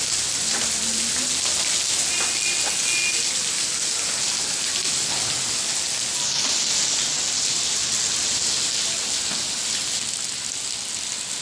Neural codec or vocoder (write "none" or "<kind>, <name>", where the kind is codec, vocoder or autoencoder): none